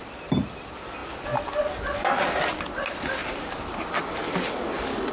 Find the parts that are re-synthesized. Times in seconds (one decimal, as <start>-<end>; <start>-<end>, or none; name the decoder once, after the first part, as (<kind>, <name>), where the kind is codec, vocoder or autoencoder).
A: 3.2-4.1 (vocoder, BigVGAN v2)